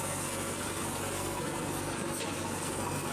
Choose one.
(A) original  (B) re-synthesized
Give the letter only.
B